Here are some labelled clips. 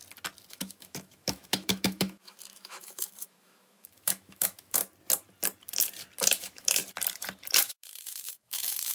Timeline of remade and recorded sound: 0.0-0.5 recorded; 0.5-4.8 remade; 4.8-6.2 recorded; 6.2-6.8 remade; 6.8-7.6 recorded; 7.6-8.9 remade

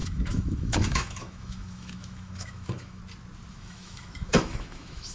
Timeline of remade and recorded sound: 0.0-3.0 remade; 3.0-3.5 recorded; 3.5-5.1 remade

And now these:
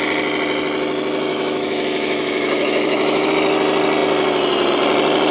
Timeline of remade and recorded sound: 0.0-1.3 recorded; 1.3-3.3 remade; 3.3-5.3 recorded

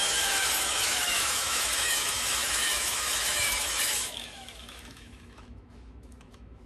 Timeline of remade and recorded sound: 0.0-6.7 remade